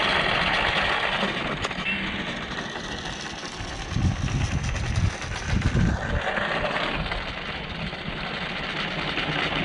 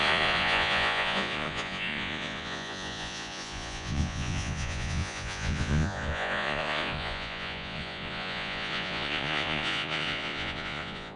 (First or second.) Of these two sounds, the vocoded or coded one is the second